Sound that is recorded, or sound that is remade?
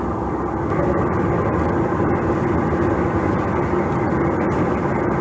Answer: recorded